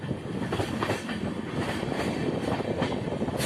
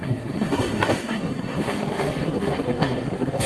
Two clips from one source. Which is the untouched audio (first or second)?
first